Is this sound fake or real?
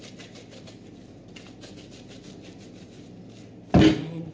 real